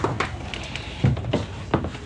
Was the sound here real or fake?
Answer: real